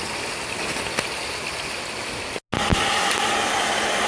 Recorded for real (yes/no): yes